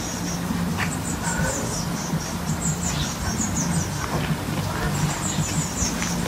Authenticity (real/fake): real